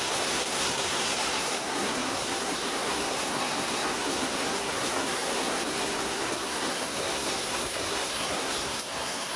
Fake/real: fake